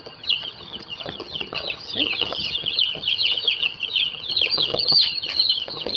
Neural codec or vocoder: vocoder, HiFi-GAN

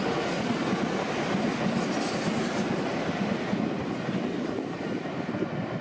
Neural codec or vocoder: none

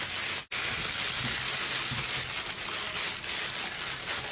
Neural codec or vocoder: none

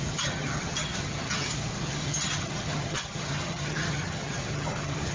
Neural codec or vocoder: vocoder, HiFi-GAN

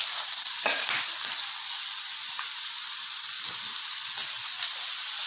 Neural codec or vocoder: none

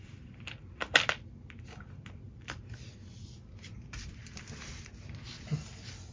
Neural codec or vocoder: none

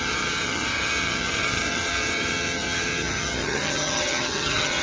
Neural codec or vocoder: vocoder, HiFi-GAN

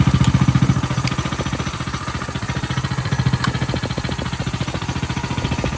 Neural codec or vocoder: none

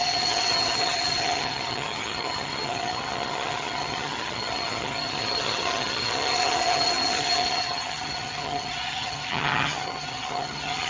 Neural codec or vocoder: vocoder, HiFi-GAN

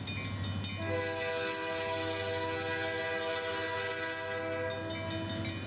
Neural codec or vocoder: none